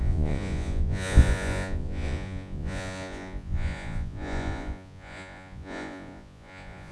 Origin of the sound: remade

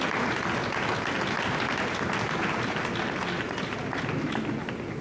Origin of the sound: recorded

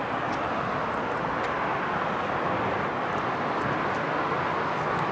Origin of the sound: recorded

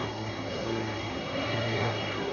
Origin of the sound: remade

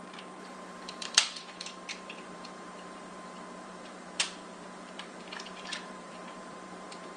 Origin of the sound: remade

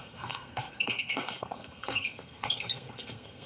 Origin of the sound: remade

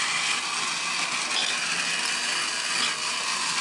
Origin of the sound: recorded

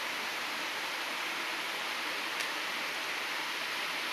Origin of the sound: recorded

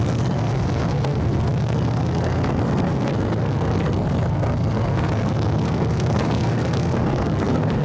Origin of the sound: remade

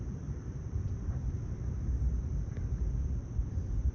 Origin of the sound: remade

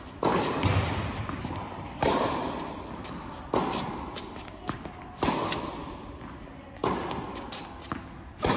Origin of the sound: recorded